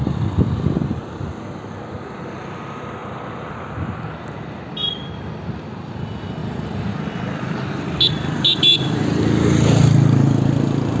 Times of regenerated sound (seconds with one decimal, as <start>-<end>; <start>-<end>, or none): 6.4-6.9